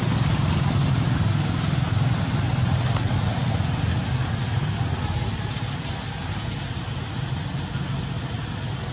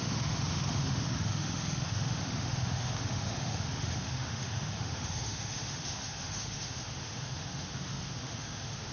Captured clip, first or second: first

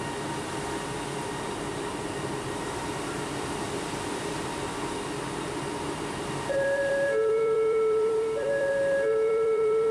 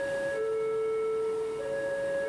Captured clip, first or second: second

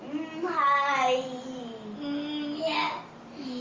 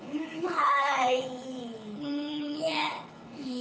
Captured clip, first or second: first